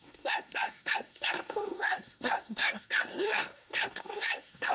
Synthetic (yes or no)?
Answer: yes